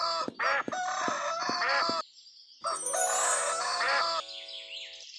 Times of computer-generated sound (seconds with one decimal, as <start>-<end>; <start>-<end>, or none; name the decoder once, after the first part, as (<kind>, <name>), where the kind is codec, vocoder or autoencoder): none